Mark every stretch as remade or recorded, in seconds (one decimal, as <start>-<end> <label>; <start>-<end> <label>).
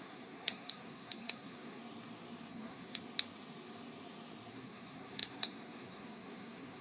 0.0-1.8 remade; 1.8-2.5 recorded; 2.5-3.0 remade; 3.0-4.5 recorded; 4.5-6.8 remade